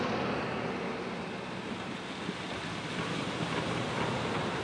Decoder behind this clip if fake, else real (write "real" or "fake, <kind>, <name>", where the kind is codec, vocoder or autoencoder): real